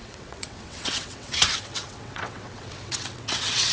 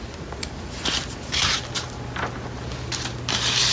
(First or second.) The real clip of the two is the second